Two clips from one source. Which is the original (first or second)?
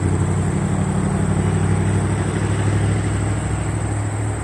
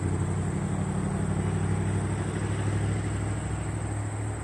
second